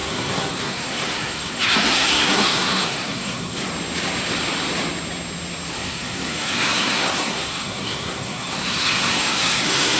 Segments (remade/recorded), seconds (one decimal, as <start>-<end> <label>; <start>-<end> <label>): 0.0-3.7 remade; 3.7-5.7 recorded; 5.7-10.0 remade